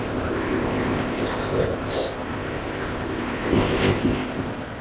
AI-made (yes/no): yes